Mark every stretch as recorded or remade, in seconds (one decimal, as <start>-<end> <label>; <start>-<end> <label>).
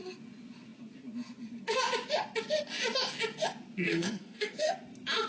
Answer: 0.0-3.9 recorded; 3.9-4.7 remade; 4.7-5.3 recorded